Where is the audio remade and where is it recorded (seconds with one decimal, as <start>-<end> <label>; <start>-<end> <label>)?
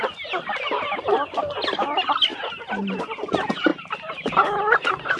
0.0-5.2 recorded